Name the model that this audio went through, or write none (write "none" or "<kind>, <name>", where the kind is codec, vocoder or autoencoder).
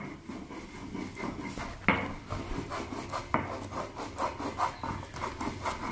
none